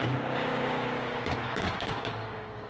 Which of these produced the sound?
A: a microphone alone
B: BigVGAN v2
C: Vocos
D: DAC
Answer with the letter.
D